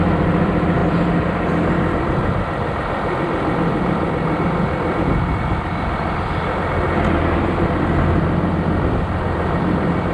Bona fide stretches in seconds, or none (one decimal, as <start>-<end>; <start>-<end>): 0.0-10.1